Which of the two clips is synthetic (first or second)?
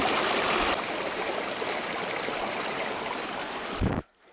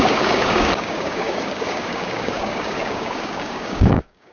second